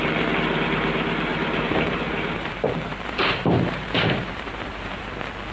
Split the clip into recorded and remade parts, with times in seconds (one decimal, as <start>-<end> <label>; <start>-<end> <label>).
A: 0.0-1.3 recorded; 1.3-2.5 remade; 2.5-2.9 recorded; 2.9-5.0 remade; 5.0-5.5 recorded

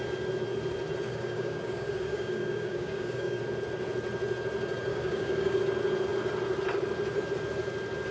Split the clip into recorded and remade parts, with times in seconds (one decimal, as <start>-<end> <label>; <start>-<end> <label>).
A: 0.0-1.1 recorded; 1.1-3.4 remade; 3.4-4.9 recorded; 4.9-5.6 remade; 5.6-8.1 recorded

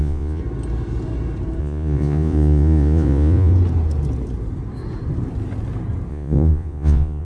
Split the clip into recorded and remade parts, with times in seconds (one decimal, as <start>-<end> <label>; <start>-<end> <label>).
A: 0.0-0.4 remade; 0.4-1.6 recorded; 1.6-3.5 remade; 3.5-6.1 recorded; 6.1-7.2 remade

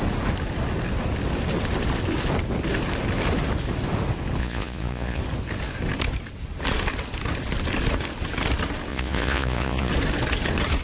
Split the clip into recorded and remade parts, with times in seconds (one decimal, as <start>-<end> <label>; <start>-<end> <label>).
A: 0.0-4.4 recorded; 4.4-5.2 remade; 5.2-8.9 recorded; 8.9-9.9 remade; 9.9-10.8 recorded

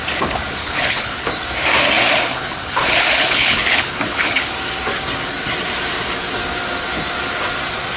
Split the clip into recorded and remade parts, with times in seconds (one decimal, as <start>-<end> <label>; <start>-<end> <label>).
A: 0.0-0.6 recorded; 0.6-1.3 remade; 1.3-2.3 recorded; 2.3-4.5 remade; 4.5-8.0 recorded

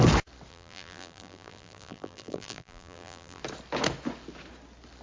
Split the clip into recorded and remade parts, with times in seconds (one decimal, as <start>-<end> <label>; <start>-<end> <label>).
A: 0.0-0.5 recorded; 0.5-3.4 remade; 3.4-5.0 recorded

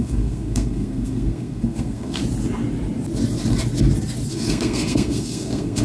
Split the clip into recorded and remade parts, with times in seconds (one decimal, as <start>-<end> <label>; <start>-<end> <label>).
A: 0.0-2.2 remade; 2.2-4.3 recorded; 4.3-5.8 remade

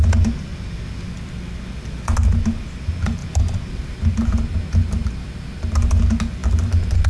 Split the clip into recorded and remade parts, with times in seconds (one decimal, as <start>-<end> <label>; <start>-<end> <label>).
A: 0.0-0.5 recorded; 0.5-1.3 remade; 1.3-3.2 recorded; 3.2-4.1 remade; 4.1-5.0 recorded; 5.0-6.0 remade; 6.0-7.1 recorded